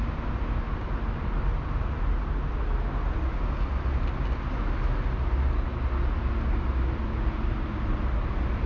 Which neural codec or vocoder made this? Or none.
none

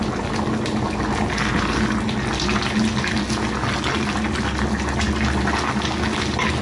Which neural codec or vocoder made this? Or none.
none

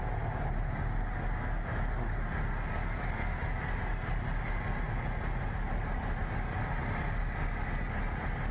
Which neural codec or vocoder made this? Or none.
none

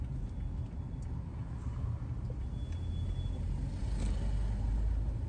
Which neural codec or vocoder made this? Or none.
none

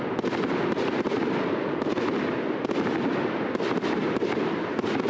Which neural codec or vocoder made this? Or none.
none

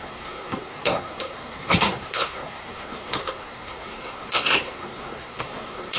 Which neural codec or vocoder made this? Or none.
codec, SNAC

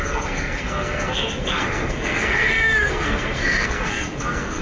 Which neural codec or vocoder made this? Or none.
codec, SNAC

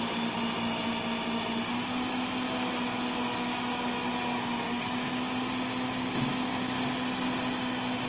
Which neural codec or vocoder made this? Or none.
none